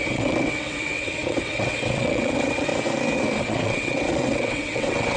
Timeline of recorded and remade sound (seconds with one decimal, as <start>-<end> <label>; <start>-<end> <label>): 0.0-2.7 remade; 2.7-3.4 recorded; 3.4-5.2 remade